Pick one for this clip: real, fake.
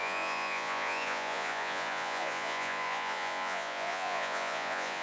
fake